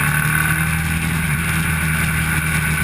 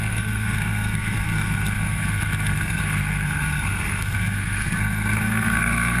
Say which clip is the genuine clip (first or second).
first